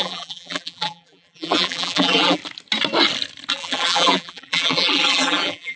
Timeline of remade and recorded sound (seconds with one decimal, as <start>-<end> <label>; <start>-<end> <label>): 0.0-2.4 remade; 2.4-3.5 recorded; 3.5-5.8 remade